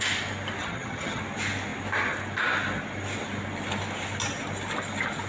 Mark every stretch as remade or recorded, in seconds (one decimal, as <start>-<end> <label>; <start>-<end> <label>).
0.0-0.6 recorded; 0.6-1.2 remade; 1.2-5.3 recorded